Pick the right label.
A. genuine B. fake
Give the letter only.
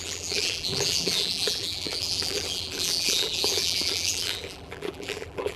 B